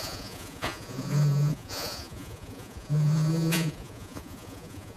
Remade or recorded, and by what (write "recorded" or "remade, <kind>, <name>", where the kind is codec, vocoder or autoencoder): remade, vocoder, Vocos